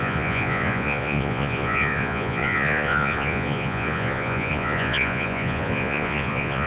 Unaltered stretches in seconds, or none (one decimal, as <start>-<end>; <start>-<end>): none